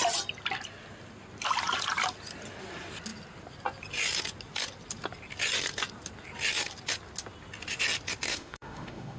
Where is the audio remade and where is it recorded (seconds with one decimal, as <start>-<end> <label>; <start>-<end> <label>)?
0.0-8.3 recorded; 8.3-9.2 remade